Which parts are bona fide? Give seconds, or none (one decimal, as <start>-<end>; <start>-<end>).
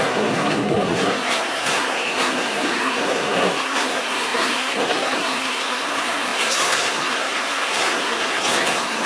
none